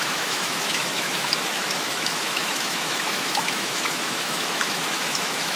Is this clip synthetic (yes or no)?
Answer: yes